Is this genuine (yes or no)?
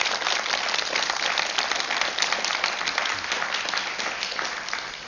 yes